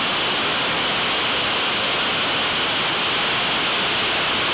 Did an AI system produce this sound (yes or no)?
no